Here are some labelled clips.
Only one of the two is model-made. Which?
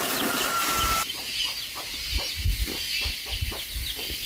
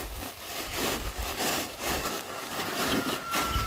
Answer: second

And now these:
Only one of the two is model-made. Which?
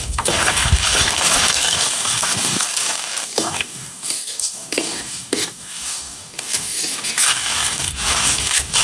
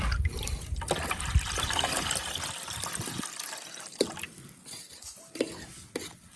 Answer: first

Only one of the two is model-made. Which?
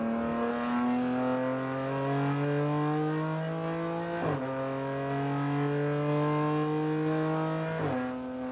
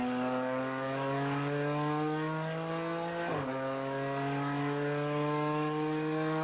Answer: second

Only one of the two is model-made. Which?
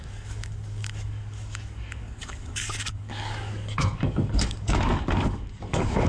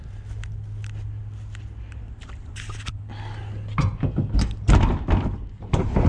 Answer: first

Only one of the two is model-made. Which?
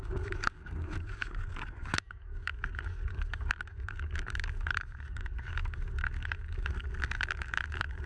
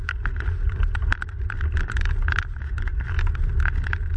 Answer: first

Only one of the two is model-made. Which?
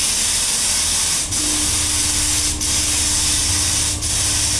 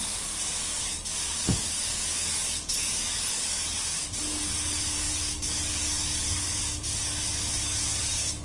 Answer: second